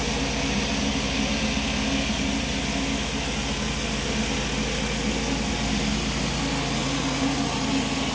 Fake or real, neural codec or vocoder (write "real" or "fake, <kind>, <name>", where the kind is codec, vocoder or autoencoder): real